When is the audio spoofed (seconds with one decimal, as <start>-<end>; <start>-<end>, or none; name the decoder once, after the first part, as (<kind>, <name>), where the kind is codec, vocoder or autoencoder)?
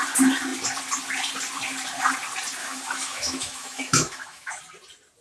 2.6-4.6 (autoencoder, DAC-VAE)